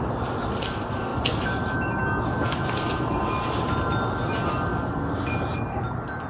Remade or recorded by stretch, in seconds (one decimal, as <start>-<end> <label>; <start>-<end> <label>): 0.0-6.3 recorded